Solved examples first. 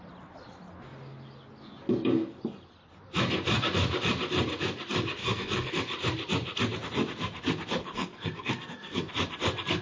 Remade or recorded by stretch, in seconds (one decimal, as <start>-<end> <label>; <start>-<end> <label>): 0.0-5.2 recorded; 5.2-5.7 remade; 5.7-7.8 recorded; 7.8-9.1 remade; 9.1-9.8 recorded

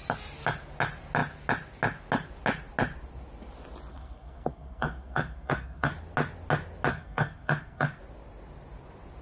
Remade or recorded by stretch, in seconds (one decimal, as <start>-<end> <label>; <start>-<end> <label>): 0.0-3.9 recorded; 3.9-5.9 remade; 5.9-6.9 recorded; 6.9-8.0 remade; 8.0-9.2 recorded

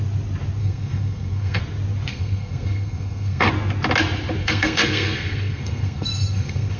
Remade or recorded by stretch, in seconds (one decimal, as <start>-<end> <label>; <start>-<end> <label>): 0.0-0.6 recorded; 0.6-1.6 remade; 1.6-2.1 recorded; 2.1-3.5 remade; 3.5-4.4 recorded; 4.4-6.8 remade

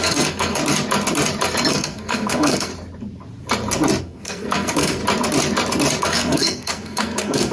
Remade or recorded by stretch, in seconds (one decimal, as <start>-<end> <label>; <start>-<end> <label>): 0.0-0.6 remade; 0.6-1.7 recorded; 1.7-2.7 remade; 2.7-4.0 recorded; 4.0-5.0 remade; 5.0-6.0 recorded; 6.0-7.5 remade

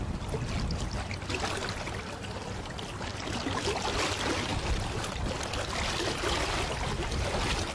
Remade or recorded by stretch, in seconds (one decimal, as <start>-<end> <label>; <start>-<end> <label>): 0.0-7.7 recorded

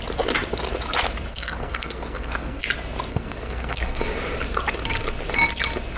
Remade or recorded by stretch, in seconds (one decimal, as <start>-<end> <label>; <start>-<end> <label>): 0.0-1.3 recorded; 1.3-2.6 remade; 2.6-3.1 recorded; 3.1-4.0 remade; 4.0-6.0 recorded